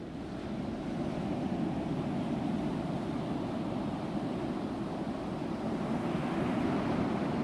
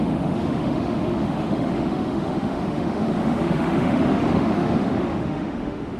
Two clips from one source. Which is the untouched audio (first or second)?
first